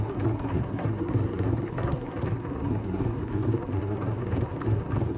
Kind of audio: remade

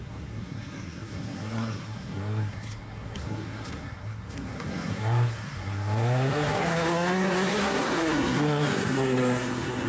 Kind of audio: remade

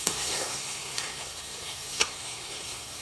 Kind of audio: remade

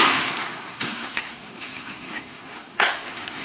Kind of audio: remade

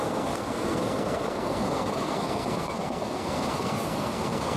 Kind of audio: remade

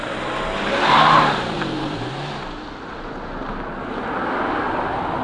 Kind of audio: recorded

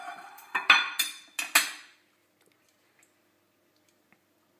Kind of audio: recorded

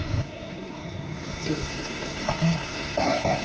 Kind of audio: remade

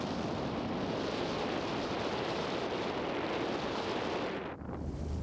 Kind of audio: recorded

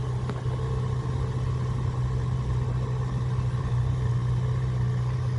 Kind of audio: recorded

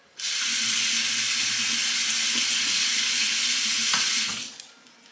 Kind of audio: recorded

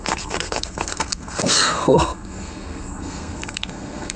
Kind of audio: remade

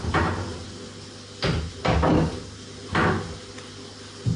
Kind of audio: recorded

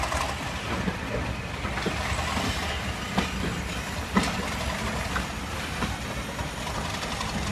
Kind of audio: recorded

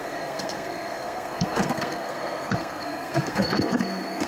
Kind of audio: remade